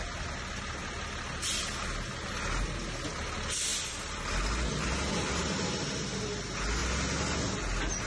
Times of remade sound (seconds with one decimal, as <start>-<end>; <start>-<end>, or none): 3.7-4.3